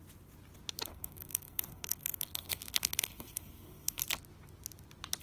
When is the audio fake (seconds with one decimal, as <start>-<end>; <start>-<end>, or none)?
0.9-4.0